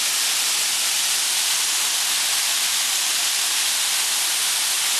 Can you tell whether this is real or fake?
real